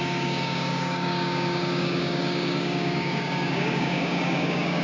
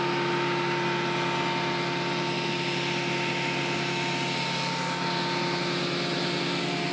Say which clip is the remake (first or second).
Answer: first